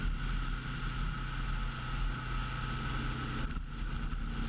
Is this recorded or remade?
recorded